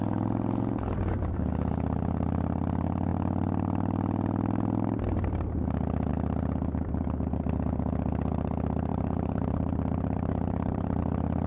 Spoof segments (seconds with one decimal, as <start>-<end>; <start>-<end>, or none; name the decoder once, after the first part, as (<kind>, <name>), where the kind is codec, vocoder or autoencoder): 8.9-11.0 (vocoder, BigVGAN v2)